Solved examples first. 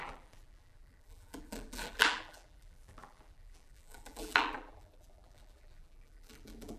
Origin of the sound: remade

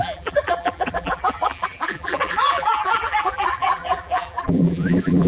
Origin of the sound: remade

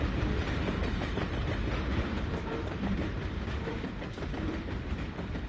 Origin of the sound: remade